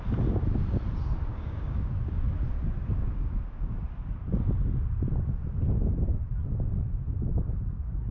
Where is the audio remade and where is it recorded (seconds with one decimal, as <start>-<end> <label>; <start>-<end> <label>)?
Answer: 0.0-1.3 recorded; 1.3-1.9 remade; 1.9-2.8 recorded; 2.8-3.8 remade; 3.8-8.1 recorded